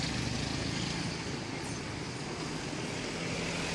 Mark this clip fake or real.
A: real